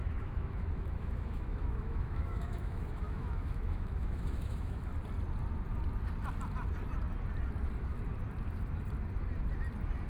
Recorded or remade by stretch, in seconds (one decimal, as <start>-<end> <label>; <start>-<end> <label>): 0.0-4.9 remade; 4.9-10.1 recorded